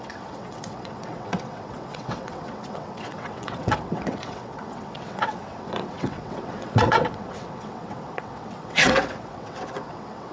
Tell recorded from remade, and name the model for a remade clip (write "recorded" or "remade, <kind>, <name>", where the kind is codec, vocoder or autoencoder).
remade, vocoder, WaveNeXt